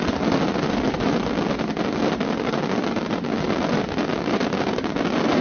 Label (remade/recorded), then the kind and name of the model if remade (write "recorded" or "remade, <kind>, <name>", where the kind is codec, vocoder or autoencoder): recorded